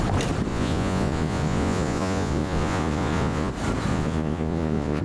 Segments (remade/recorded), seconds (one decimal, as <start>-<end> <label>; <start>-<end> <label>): 0.0-0.5 recorded; 0.5-3.5 remade; 3.5-3.9 recorded; 3.9-5.0 remade